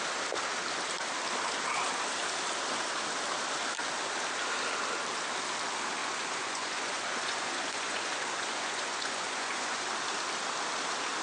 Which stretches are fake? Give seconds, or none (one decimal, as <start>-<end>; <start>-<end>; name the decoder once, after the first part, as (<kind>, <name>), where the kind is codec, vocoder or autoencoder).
6.0-9.9 (vocoder, Vocos)